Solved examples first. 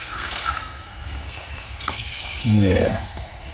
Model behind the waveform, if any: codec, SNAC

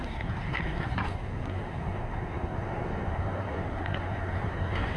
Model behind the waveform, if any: codec, SNAC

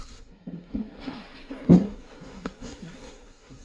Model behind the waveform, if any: codec, SNAC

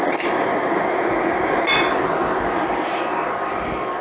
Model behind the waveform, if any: none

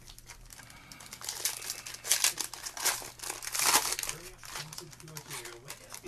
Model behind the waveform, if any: none